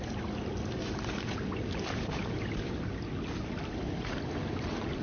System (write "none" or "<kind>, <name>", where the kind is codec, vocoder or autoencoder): none